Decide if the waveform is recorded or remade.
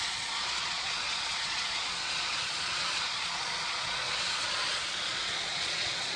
remade